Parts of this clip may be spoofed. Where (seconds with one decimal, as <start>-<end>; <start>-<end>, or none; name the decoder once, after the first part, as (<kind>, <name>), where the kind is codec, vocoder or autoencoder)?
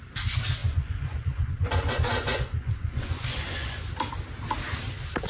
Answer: 0.6-3.8 (vocoder, Vocos)